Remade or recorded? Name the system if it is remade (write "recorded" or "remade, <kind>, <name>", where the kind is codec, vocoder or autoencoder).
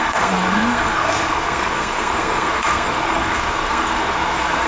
remade, codec, SNAC